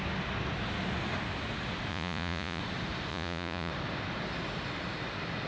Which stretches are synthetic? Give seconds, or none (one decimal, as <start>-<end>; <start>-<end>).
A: 1.9-2.6; 3.1-3.7